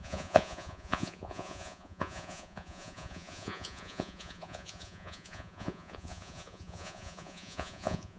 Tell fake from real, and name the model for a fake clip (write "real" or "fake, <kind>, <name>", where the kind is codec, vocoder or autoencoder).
fake, vocoder, Vocos